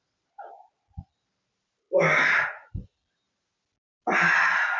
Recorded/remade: recorded